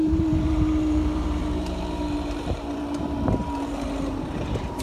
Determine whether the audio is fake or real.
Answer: fake